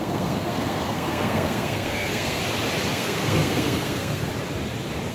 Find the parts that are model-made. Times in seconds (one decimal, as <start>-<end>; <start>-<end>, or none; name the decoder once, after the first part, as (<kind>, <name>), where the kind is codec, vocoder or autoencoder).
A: 0.0-2.4 (codec, SNAC); 2.9-4.3